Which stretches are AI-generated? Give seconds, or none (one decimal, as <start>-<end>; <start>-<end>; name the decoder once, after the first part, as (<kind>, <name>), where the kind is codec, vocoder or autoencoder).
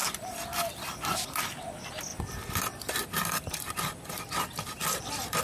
0.0-1.4 (vocoder, BigVGAN v2); 2.1-5.4